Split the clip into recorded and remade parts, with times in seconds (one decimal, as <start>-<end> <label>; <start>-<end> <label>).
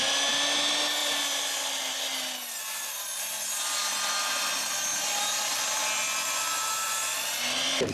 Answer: 0.0-7.9 recorded